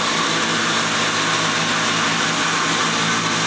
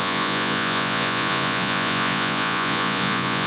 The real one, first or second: first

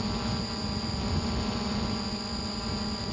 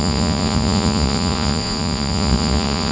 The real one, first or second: first